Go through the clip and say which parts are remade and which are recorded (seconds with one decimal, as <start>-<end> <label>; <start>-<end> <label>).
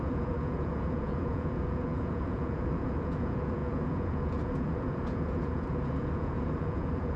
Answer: 0.0-7.2 remade